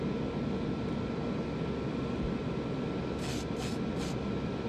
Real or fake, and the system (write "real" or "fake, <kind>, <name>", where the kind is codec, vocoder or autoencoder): real